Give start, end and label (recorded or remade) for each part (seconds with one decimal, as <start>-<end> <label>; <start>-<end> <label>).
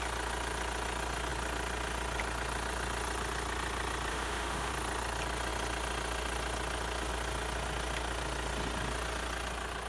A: 0.0-4.1 recorded; 4.1-4.7 remade; 4.7-9.9 recorded